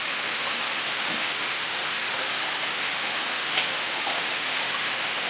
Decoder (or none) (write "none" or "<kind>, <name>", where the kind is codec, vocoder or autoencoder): autoencoder, DAC-VAE